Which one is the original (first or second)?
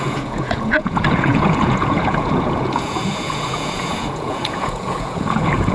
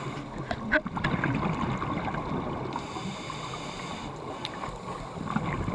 second